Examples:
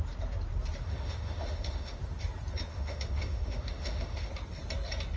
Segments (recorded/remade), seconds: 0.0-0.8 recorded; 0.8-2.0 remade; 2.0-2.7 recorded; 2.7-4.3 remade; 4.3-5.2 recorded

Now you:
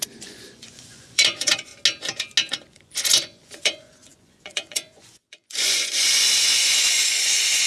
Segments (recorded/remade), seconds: 0.0-1.7 remade; 1.7-2.5 recorded; 2.5-7.7 remade

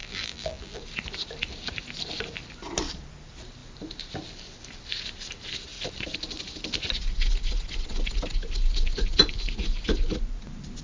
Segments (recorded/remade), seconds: 0.0-0.8 remade; 0.8-10.8 recorded

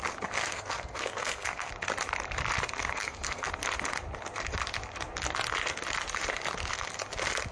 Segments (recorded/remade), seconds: 0.0-0.4 recorded; 0.4-1.7 remade; 1.7-2.9 recorded; 2.9-3.5 remade; 3.5-7.5 recorded

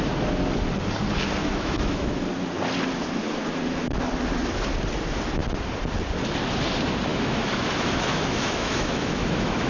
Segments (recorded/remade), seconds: 0.0-1.4 recorded; 1.4-2.2 remade; 2.2-7.1 recorded; 7.1-9.7 remade